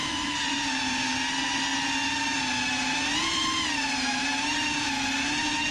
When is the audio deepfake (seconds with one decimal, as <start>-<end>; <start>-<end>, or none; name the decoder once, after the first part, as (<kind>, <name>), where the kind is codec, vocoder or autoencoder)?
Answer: 0.0-1.7 (vocoder, BigVGAN v2); 4.2-5.7